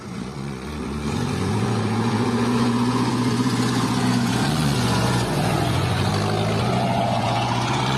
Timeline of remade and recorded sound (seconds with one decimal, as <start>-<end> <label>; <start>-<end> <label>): 0.0-6.1 remade; 6.1-6.6 recorded; 6.6-8.0 remade